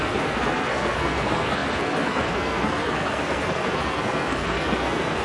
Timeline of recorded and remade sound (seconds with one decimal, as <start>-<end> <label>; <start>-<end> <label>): 0.0-5.2 remade